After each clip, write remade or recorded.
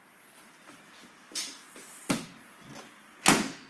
recorded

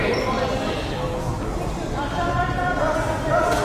recorded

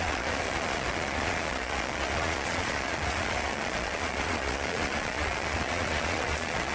remade